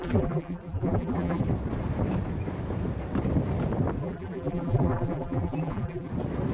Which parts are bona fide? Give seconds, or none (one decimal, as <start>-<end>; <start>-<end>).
1.4-4.0; 6.1-6.5